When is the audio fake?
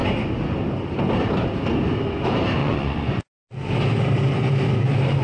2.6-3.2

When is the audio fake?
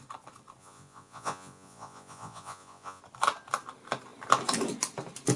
0.6-3.0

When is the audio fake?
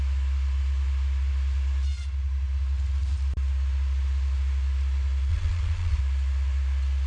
5.3-6.0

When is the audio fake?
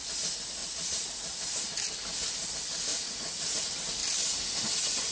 0.6-1.1; 2.9-3.6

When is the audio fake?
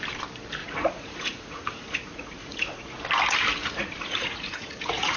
0.6-3.0; 3.6-5.2